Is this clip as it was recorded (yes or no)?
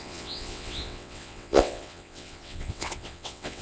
no